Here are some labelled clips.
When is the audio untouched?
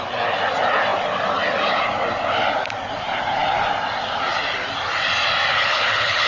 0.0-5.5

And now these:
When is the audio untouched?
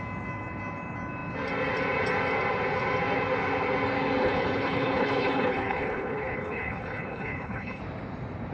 0.0-4.2; 7.8-8.5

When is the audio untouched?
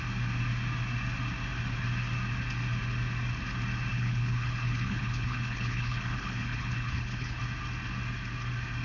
0.0-3.9; 7.4-8.8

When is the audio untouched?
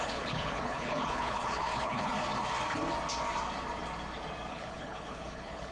2.1-4.5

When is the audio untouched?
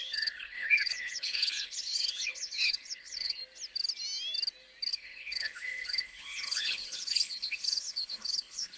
3.4-4.9